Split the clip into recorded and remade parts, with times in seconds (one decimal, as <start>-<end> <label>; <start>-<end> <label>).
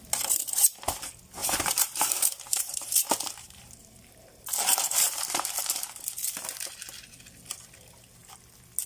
0.0-1.4 recorded; 1.4-6.0 remade; 6.0-8.9 recorded